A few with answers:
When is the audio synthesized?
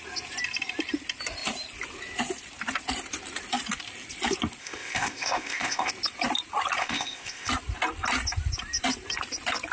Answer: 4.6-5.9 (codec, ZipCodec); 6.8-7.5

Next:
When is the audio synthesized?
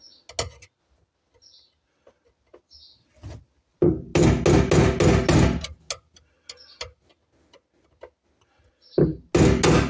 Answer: none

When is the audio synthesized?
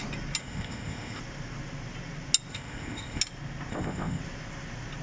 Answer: 0.4-1.2 (codec, ZipCodec); 2.5-3.2; 3.7-4.2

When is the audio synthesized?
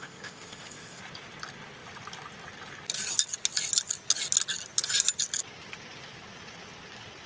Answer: 0.0-1.0 (codec, ZipCodec)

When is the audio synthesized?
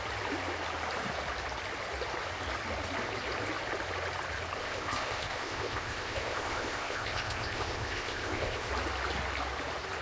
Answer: 4.6-8.7 (codec, ZipCodec)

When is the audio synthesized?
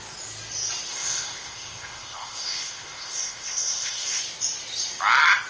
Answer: 0.9-4.2 (codec, ZipCodec)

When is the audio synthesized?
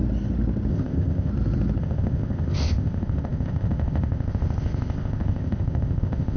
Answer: 0.7-1.3 (codec, ZipCodec); 1.8-6.4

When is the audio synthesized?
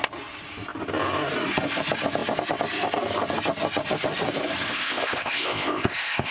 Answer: 4.7-6.3 (codec, ZipCodec)